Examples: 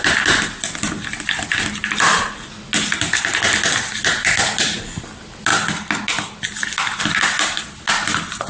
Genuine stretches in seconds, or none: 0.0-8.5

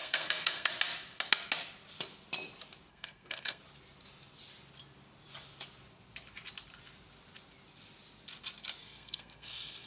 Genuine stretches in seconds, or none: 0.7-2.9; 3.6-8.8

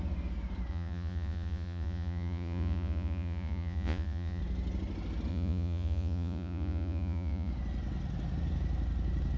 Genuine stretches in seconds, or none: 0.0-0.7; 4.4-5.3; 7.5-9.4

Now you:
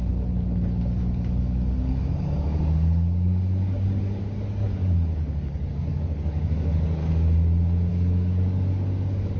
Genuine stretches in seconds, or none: 7.0-7.9

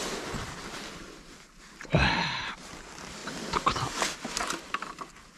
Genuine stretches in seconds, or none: 0.0-5.4

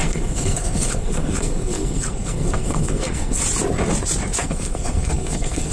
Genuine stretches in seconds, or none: 3.4-4.4

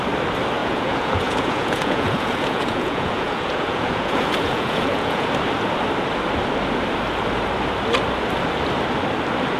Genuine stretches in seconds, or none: 0.0-0.6; 5.3-9.6

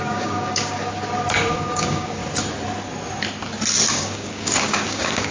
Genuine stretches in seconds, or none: 0.9-1.5; 2.2-3.9